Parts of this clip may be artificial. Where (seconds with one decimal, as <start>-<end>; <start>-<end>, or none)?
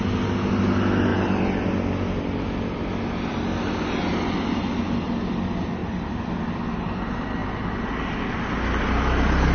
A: 1.1-1.7; 5.8-6.3